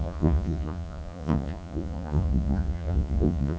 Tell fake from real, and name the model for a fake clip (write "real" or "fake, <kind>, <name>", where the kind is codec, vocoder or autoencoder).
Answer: fake, vocoder, Vocos